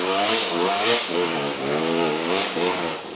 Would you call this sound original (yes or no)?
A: no